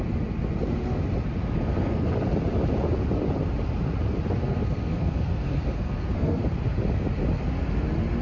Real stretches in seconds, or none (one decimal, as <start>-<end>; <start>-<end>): 0.0-1.4; 2.1-4.4; 6.4-8.2